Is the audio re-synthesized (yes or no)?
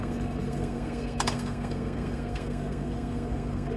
yes